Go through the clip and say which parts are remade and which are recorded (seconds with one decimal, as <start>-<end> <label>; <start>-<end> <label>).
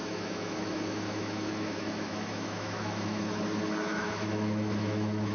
0.0-3.2 remade; 3.2-3.9 recorded; 3.9-5.3 remade